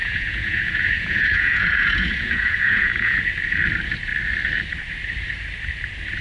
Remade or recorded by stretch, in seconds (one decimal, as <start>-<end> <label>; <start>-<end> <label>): 0.0-3.2 remade; 3.2-6.2 recorded